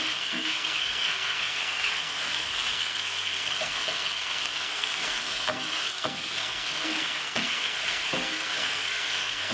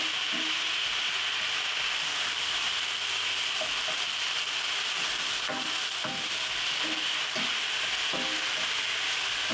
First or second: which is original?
second